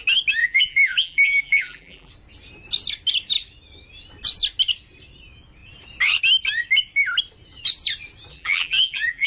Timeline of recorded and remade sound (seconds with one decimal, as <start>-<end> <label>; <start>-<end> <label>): 0.0-0.4 recorded; 0.4-2.1 remade; 2.1-8.3 recorded; 8.3-9.3 remade

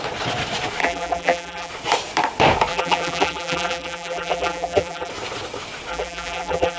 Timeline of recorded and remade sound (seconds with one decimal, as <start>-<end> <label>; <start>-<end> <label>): 0.0-0.8 recorded; 0.8-1.7 remade; 1.7-2.7 recorded; 2.7-5.1 remade; 5.1-5.9 recorded; 5.9-6.8 remade

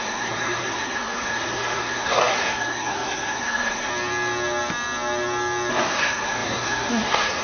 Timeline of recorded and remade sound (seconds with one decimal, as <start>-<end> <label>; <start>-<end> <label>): 0.0-3.9 remade; 3.9-5.7 recorded; 5.7-7.4 remade

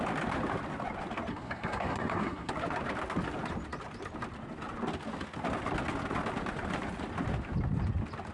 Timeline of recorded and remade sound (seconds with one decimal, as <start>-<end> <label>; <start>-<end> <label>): 0.0-1.3 recorded; 1.3-2.5 remade; 2.5-8.3 recorded

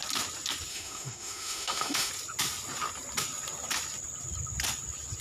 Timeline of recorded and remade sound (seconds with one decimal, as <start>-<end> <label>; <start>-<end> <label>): 0.0-0.7 recorded; 0.7-2.1 remade; 2.1-5.2 recorded